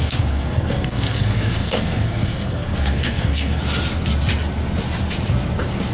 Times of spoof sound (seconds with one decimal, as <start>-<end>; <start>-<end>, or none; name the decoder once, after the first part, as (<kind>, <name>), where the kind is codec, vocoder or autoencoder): 0.0-3.6 (codec, SNAC)